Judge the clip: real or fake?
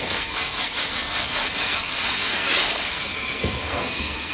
fake